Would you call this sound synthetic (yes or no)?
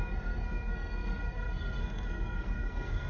yes